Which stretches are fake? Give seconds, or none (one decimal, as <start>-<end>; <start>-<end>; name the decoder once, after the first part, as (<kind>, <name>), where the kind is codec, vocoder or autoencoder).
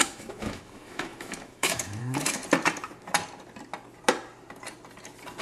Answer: 0.0-2.4 (autoencoder, DAC-VAE)